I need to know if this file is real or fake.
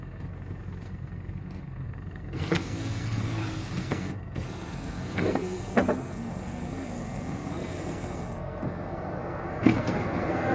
fake